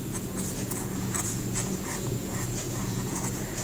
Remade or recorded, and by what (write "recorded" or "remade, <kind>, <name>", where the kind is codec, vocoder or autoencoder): remade, vocoder, Vocos